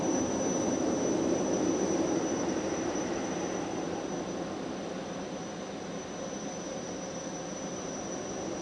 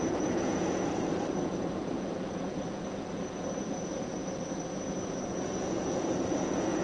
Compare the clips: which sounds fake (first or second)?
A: second